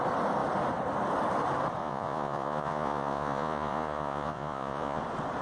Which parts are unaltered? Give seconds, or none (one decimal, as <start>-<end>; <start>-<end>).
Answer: 0.0-1.8; 5.0-5.4